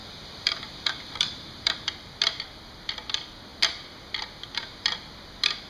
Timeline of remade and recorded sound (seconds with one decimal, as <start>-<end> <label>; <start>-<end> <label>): 0.0-1.9 remade; 1.9-5.7 recorded